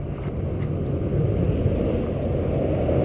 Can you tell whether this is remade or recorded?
recorded